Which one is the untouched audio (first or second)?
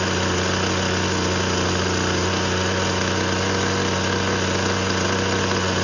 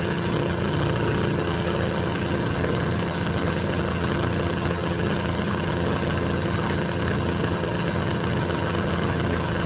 first